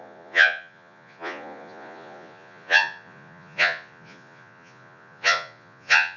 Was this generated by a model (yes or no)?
yes